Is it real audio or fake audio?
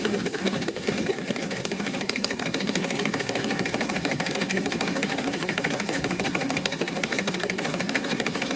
fake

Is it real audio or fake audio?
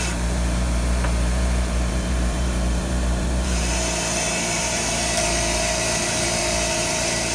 fake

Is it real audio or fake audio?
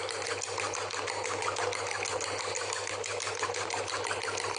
real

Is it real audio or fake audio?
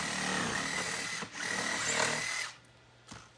real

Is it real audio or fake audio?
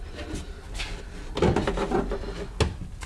real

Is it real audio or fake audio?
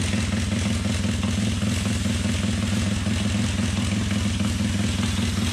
real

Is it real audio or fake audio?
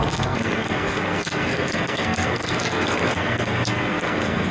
fake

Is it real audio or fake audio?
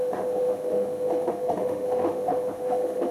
fake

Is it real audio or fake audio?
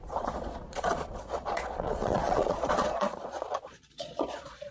fake